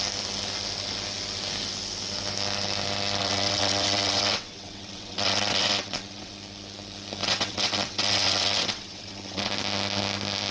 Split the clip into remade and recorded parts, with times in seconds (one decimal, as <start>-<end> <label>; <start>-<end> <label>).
0.0-3.2 recorded; 3.2-6.3 remade; 6.3-7.2 recorded; 7.2-9.5 remade; 9.5-10.5 recorded